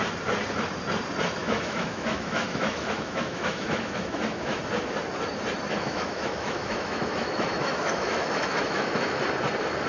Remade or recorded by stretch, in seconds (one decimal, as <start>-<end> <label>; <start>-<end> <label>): 0.0-1.4 recorded; 1.4-4.6 remade; 4.6-5.8 recorded; 5.8-9.2 remade; 9.2-9.9 recorded